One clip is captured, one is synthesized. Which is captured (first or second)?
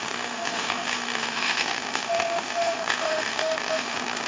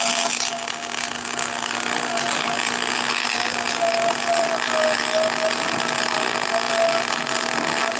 second